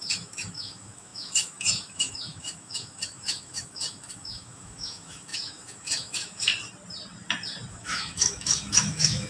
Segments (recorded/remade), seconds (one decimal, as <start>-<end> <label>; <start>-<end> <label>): 0.0-6.5 remade; 6.5-7.7 recorded; 7.7-9.3 remade